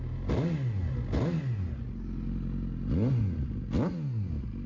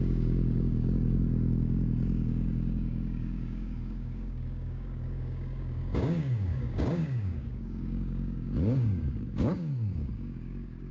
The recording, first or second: first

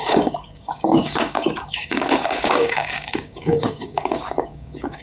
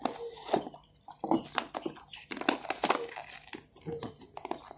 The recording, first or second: second